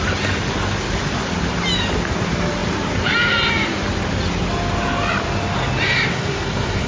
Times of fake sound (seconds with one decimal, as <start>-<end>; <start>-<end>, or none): 6.1-6.9